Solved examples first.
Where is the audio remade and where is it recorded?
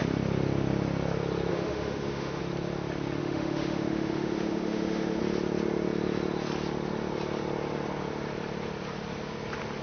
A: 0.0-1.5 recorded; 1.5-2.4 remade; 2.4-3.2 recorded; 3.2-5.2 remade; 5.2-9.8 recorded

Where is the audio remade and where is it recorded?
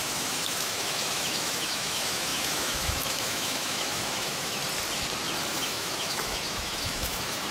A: 0.0-4.6 remade; 4.6-5.5 recorded; 5.5-7.5 remade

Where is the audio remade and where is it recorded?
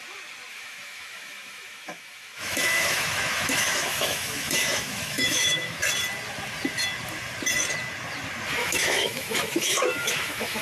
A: 0.0-0.5 recorded; 0.5-5.8 remade; 5.8-8.6 recorded; 8.6-10.6 remade